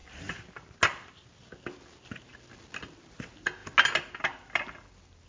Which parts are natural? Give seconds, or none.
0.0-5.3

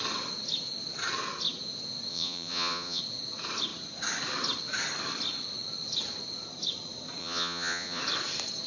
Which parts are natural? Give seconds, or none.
0.0-2.1; 3.0-7.2; 8.0-8.7

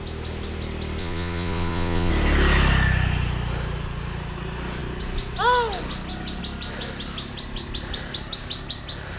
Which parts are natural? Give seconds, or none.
0.0-1.0; 2.1-9.2

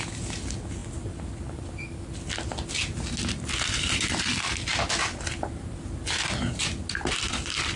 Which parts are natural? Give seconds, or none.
0.0-7.8

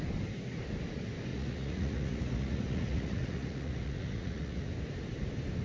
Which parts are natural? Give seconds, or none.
0.0-1.3; 4.7-5.6

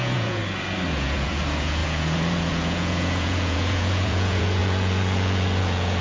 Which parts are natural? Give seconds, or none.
0.4-0.9